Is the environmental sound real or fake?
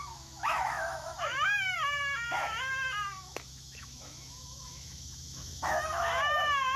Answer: fake